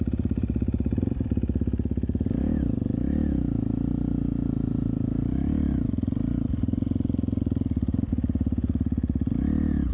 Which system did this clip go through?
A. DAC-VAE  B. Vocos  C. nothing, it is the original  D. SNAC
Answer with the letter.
C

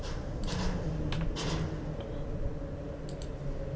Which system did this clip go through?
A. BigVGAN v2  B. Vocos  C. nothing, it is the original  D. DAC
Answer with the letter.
C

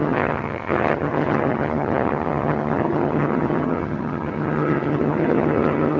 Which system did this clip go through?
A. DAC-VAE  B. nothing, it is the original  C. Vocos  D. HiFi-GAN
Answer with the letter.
D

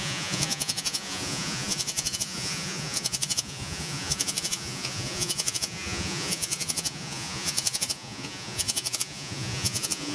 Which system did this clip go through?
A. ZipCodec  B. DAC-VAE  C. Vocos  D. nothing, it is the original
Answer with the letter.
C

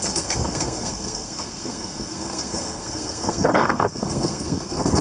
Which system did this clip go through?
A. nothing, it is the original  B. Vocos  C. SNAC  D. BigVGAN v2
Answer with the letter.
C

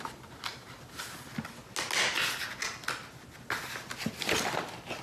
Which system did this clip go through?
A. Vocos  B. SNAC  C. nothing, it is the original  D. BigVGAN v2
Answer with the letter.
C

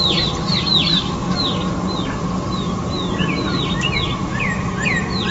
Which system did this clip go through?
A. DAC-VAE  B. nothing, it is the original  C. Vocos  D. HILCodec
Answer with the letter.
B